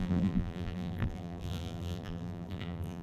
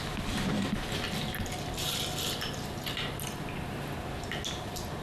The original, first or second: second